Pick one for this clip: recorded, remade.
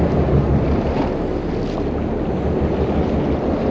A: recorded